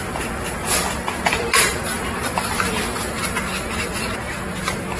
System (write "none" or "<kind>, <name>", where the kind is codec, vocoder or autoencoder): vocoder, BigVGAN v2